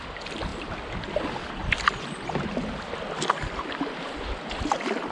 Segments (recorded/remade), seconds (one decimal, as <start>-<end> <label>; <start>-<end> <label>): 0.0-5.1 recorded